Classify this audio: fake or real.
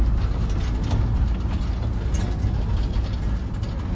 real